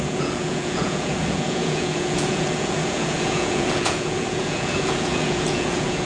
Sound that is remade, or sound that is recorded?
remade